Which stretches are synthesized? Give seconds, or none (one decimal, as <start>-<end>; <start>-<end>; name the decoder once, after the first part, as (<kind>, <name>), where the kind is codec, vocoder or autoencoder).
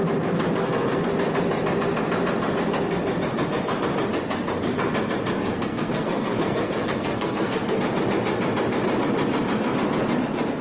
0.6-1.1 (codec, SNAC); 5.4-7.8